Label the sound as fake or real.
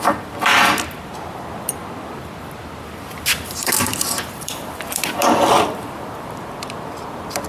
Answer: fake